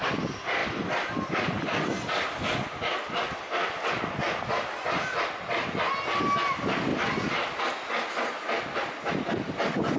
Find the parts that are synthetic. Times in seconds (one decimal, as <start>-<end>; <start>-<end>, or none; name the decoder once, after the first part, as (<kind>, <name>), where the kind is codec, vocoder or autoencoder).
none